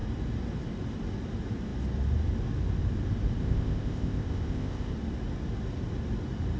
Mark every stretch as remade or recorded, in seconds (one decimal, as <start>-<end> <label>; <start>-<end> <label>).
0.0-3.4 recorded; 3.4-4.9 remade; 4.9-6.6 recorded